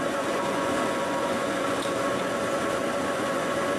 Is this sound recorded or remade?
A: remade